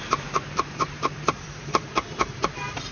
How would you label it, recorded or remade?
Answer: remade